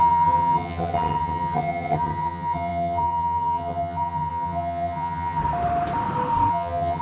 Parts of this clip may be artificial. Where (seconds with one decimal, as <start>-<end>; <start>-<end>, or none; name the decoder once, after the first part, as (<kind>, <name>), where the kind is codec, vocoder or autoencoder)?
0.0-5.4 (vocoder, HiFi-GAN); 6.5-7.0